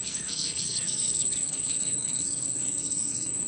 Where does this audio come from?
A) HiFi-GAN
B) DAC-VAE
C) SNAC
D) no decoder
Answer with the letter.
C